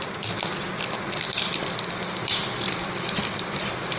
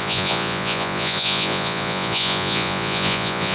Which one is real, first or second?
first